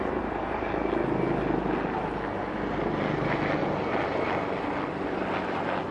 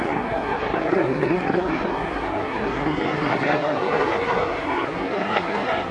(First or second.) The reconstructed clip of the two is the second